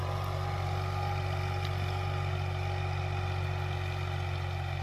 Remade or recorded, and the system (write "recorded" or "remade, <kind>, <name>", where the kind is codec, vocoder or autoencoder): recorded